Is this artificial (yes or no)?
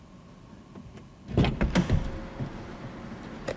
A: no